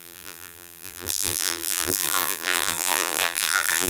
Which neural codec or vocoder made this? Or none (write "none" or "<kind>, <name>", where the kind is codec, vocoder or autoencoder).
vocoder, BigVGAN v2